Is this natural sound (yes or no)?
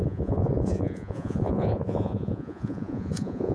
no